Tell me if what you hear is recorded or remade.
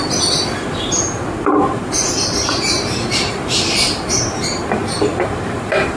remade